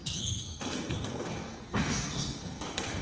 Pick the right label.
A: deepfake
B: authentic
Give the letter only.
A